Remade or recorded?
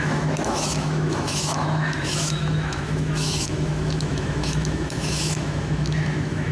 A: remade